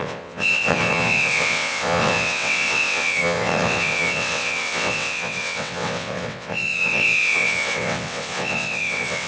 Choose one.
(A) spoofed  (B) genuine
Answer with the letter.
A